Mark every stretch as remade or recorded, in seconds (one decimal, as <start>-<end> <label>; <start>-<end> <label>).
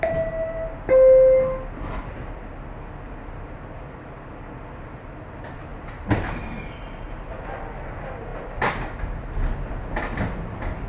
0.0-10.9 recorded